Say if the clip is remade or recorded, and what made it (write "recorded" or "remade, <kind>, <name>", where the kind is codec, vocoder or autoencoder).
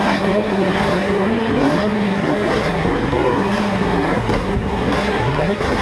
remade, codec, SNAC